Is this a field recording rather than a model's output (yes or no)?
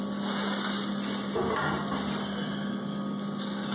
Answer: yes